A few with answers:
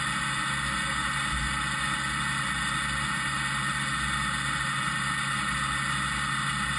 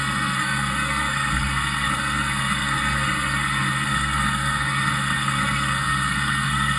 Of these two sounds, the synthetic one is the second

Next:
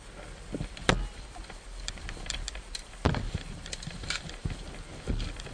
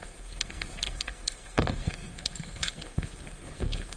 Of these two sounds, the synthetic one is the second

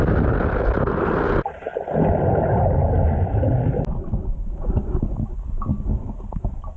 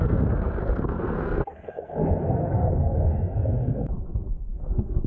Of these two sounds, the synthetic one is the second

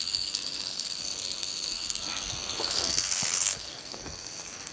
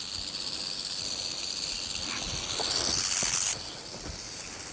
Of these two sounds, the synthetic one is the first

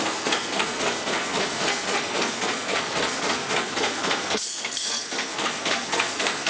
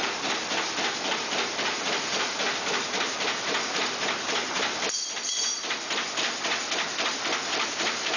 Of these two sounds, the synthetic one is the first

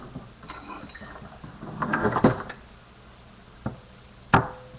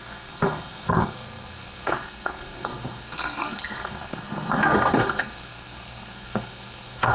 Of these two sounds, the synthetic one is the second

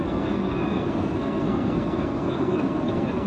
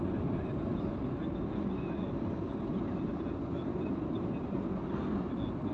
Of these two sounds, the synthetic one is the first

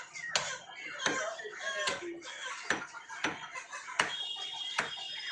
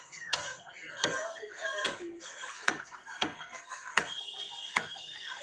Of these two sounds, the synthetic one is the second